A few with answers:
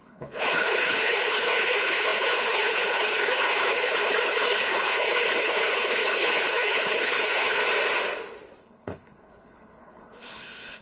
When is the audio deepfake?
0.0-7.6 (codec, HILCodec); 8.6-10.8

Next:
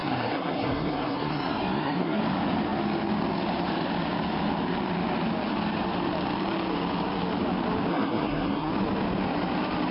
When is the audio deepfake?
0.0-2.2 (codec, SNAC); 7.9-8.7